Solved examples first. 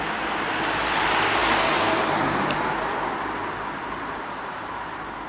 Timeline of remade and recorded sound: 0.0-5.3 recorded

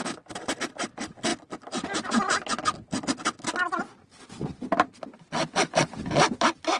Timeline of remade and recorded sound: 0.0-0.6 remade; 0.6-6.8 recorded

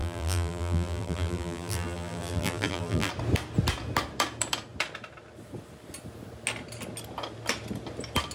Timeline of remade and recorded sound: 0.0-3.1 remade; 3.1-8.3 recorded

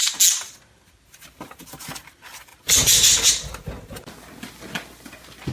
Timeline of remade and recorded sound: 0.0-5.5 recorded

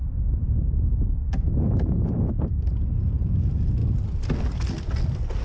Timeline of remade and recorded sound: 0.0-5.4 recorded

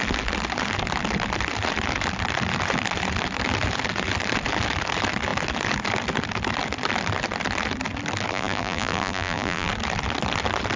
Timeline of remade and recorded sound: 0.0-8.3 recorded; 8.3-9.7 remade; 9.7-10.8 recorded

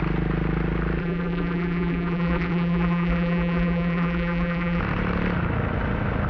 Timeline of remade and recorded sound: 0.0-1.0 recorded; 1.0-4.8 remade; 4.8-6.3 recorded